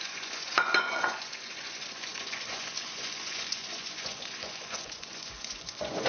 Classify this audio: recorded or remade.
remade